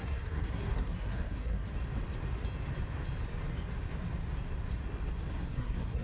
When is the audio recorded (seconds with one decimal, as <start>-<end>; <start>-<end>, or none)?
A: 1.7-5.3